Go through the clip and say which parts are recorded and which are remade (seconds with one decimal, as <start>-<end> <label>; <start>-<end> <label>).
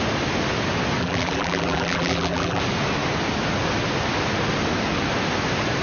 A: 0.0-1.0 recorded; 1.0-2.6 remade; 2.6-5.8 recorded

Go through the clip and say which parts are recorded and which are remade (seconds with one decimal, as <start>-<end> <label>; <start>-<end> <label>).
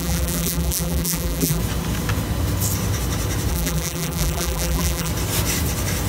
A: 0.0-1.6 remade; 1.6-3.5 recorded; 3.5-5.1 remade; 5.1-6.1 recorded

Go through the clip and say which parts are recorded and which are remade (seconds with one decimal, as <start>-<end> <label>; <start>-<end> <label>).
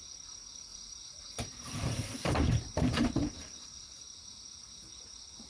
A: 0.0-0.7 recorded; 0.7-4.0 remade; 4.0-5.5 recorded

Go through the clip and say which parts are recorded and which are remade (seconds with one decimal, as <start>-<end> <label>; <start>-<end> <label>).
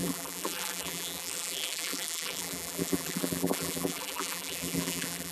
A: 0.0-5.3 remade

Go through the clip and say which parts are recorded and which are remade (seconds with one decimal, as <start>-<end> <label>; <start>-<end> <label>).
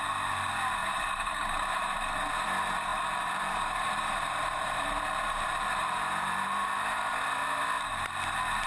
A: 0.0-0.8 recorded; 0.8-2.3 remade; 2.3-2.9 recorded; 2.9-7.6 remade; 7.6-8.7 recorded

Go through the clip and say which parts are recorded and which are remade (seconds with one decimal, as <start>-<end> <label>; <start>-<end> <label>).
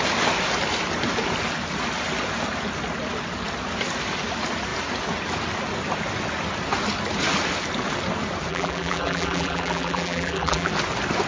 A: 0.0-8.5 recorded; 8.5-10.7 remade; 10.7-11.3 recorded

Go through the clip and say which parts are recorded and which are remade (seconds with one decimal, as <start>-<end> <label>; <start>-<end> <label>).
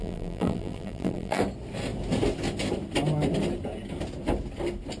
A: 0.0-1.4 remade; 1.4-5.0 recorded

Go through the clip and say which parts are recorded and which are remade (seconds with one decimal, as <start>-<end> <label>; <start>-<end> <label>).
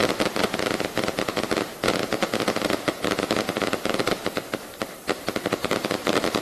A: 0.0-3.8 recorded; 3.8-4.2 remade; 4.2-5.5 recorded; 5.5-6.4 remade